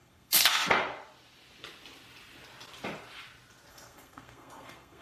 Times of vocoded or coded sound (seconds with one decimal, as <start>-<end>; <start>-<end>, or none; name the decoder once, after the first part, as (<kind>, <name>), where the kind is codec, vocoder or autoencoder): 0.0-0.7 (codec, SNAC); 3.7-5.0